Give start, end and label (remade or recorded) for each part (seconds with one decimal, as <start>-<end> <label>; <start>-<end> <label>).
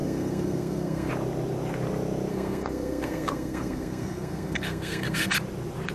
0.0-1.1 remade; 1.1-2.3 recorded; 2.3-5.3 remade; 5.3-5.9 recorded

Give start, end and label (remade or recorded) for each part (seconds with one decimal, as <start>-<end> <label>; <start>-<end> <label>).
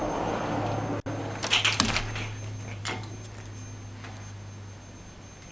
0.0-5.5 recorded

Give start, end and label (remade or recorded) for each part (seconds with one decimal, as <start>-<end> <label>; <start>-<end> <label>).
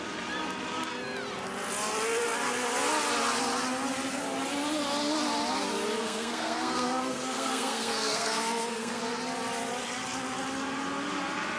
0.0-6.0 recorded; 6.0-9.0 remade; 9.0-11.6 recorded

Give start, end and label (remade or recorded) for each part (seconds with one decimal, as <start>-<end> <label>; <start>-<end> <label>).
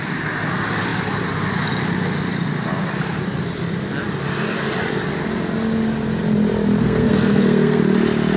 0.0-6.8 recorded; 6.8-7.8 remade; 7.8-8.4 recorded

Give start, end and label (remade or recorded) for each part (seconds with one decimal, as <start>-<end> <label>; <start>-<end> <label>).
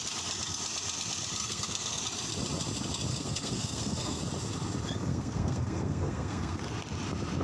0.0-1.4 recorded; 1.4-2.0 remade; 2.0-3.1 recorded; 3.1-4.2 remade; 4.2-5.1 recorded; 5.1-6.6 remade; 6.6-7.4 recorded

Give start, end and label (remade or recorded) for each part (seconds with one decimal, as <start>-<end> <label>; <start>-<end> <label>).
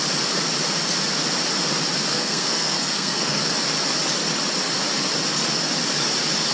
0.0-2.1 recorded; 2.1-3.4 remade; 3.4-6.5 recorded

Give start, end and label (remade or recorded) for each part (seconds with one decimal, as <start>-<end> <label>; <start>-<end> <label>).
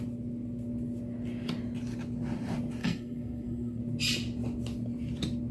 0.0-2.8 recorded; 2.8-3.8 remade; 3.8-5.5 recorded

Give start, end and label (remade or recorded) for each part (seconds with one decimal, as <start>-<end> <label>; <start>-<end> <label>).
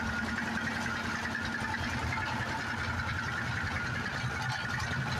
0.0-5.2 recorded